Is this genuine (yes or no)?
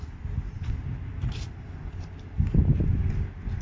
yes